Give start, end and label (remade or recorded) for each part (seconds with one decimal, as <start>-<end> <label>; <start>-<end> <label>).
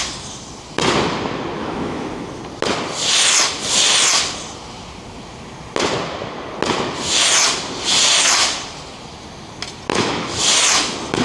0.0-1.6 recorded; 1.6-2.4 remade; 2.4-9.9 recorded; 9.9-10.4 remade; 10.4-11.2 recorded